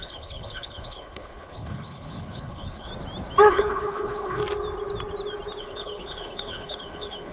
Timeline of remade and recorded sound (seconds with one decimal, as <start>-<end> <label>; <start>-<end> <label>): 0.0-2.9 remade; 2.9-3.5 recorded; 3.5-4.4 remade; 4.4-5.6 recorded; 5.6-7.3 remade